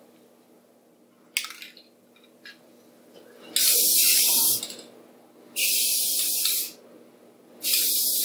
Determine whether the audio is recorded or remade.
recorded